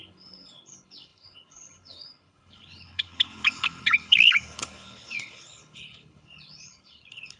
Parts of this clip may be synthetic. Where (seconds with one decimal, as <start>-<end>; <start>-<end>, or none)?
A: 0.0-7.4